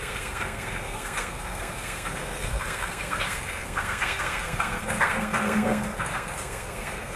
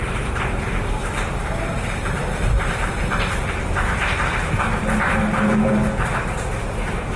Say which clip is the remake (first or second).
first